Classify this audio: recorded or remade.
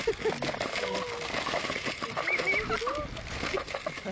recorded